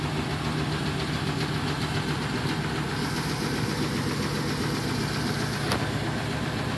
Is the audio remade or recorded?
recorded